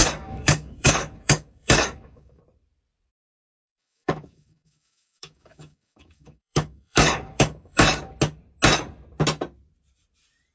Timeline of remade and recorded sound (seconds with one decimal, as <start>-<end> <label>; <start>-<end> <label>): 0.0-2.4 remade; 2.4-3.1 recorded; 3.1-8.1 remade; 8.1-10.5 recorded